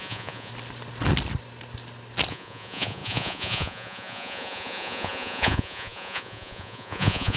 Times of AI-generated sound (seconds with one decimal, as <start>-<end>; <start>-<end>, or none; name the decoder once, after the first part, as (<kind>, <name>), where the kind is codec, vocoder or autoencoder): 0.0-0.5 (vocoder, Vocos); 2.3-7.4